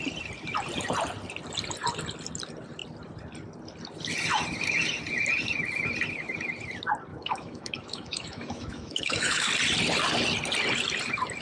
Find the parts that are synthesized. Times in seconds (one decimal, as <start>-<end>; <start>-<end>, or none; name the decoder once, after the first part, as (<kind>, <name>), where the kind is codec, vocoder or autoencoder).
7.1-9.5 (autoencoder, DAC-VAE)